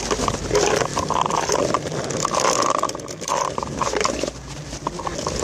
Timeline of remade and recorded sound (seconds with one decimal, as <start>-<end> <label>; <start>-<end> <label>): 0.0-5.4 recorded